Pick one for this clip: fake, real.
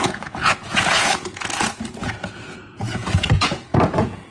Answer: fake